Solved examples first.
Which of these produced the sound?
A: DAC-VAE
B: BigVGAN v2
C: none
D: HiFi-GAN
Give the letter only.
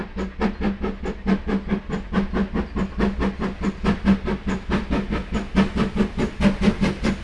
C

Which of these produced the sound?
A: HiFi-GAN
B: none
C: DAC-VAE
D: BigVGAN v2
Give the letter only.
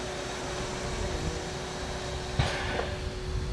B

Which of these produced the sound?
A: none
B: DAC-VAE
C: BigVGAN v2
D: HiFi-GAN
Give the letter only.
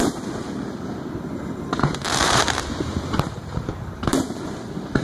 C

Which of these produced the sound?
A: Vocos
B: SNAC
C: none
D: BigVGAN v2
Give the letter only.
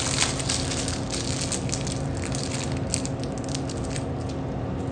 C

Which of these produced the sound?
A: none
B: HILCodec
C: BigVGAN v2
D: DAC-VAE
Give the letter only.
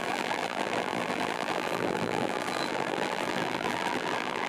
C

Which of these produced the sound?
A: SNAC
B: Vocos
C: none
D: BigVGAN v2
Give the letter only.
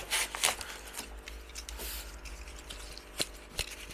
C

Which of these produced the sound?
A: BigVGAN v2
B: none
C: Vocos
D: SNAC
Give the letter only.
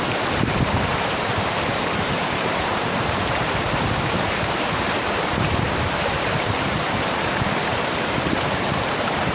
A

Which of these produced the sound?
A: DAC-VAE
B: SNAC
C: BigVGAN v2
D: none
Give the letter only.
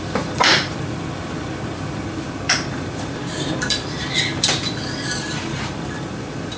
C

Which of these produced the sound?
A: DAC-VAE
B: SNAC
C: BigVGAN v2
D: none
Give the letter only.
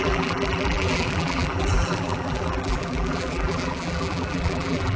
C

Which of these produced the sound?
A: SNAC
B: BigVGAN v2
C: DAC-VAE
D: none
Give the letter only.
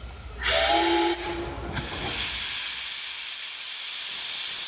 D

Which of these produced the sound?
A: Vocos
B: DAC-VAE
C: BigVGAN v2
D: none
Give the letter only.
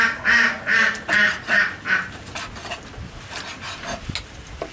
D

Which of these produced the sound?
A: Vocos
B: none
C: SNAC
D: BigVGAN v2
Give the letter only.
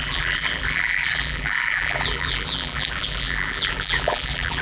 D